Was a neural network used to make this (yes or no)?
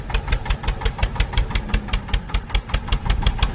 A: no